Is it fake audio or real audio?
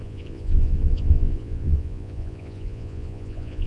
fake